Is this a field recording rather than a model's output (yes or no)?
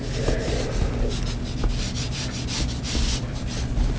yes